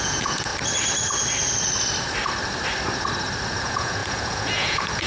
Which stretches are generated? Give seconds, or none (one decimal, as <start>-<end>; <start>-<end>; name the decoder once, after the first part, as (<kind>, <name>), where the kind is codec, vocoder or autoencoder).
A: 0.0-0.5 (vocoder, Vocos); 3.6-5.1